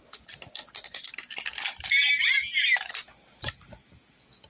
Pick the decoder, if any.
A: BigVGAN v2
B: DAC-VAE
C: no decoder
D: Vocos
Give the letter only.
C